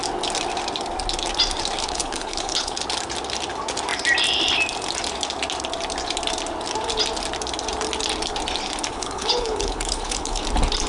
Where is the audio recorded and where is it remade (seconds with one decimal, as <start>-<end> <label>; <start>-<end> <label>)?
0.0-1.8 recorded; 1.8-2.8 remade; 2.8-8.9 recorded; 8.9-10.4 remade; 10.4-10.9 recorded